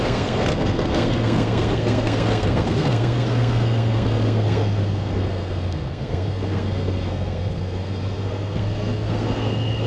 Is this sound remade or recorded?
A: remade